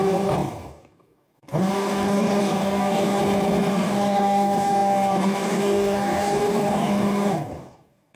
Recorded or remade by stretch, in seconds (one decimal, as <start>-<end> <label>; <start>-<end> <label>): 0.0-3.2 remade; 3.2-3.7 recorded; 3.7-8.2 remade